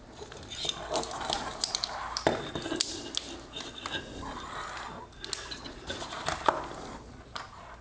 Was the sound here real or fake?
real